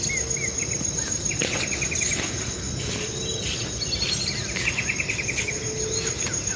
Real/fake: real